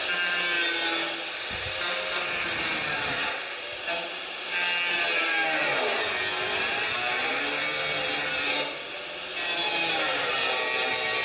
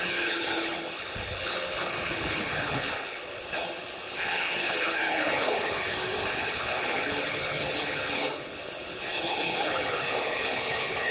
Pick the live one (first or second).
first